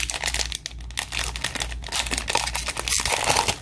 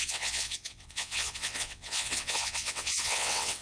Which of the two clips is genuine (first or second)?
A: first